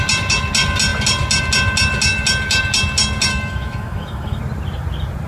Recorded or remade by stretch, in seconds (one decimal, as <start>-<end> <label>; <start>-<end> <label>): 0.0-3.3 recorded; 3.3-4.4 remade; 4.4-5.3 recorded